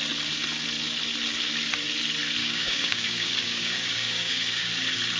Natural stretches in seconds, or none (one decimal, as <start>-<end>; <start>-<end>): 0.0-2.4; 4.7-5.2